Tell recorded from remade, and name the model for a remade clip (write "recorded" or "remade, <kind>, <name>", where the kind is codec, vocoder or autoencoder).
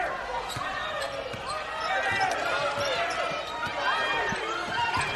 recorded